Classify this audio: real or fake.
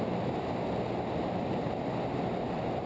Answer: real